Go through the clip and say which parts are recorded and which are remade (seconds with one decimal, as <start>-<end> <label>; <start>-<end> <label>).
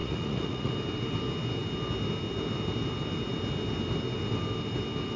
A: 0.0-0.7 remade; 0.7-5.2 recorded